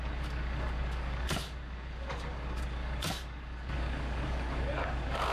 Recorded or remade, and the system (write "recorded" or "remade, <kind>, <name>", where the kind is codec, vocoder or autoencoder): remade, codec, DAC